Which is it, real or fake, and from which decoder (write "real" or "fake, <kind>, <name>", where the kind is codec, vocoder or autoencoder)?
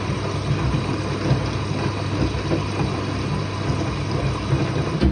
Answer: real